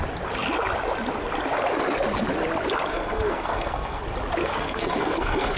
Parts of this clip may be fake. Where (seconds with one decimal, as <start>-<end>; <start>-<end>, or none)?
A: 2.9-4.0; 4.4-5.6